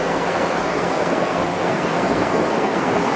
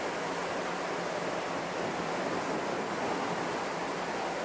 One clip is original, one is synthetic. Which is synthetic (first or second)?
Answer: first